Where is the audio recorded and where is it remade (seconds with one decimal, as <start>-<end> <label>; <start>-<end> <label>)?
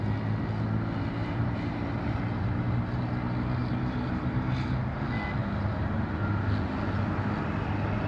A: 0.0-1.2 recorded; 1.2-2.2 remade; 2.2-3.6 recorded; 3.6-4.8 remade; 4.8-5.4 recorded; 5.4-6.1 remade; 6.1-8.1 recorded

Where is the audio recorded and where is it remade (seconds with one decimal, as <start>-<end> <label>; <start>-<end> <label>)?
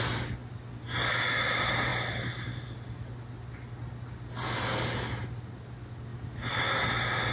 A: 0.0-7.3 recorded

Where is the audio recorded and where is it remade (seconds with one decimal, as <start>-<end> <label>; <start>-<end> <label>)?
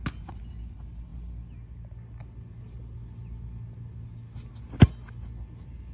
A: 0.0-5.9 recorded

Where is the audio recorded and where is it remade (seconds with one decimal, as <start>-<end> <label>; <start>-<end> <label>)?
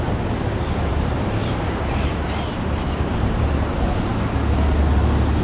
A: 0.0-0.9 recorded; 0.9-4.1 remade; 4.1-5.4 recorded